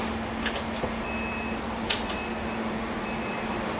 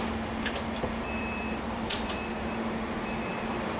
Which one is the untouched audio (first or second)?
first